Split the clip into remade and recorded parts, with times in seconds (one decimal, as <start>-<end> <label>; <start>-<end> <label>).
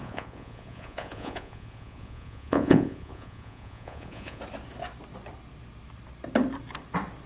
0.0-4.4 remade; 4.4-7.3 recorded